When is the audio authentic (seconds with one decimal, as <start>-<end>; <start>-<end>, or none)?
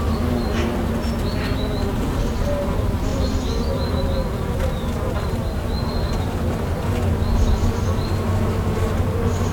0.0-9.5